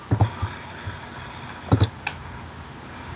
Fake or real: real